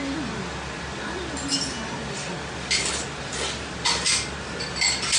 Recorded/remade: recorded